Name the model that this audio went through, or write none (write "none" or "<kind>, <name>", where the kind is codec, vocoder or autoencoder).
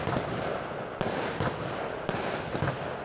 none